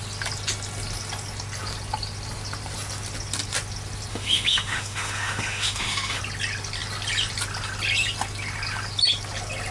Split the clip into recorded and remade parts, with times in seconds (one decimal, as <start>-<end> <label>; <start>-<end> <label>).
0.0-4.1 recorded; 4.1-6.2 remade; 6.2-9.7 recorded